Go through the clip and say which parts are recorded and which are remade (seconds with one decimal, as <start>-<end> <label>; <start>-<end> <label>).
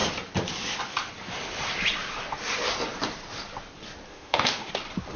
0.0-4.1 recorded; 4.1-4.7 remade; 4.7-5.2 recorded